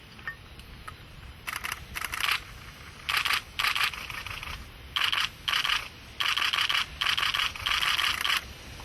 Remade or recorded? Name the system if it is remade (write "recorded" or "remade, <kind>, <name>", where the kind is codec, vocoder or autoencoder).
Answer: recorded